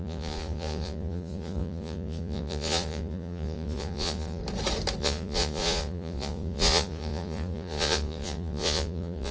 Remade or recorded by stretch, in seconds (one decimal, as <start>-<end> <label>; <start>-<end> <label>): 0.0-4.4 remade; 4.4-5.0 recorded; 5.0-9.3 remade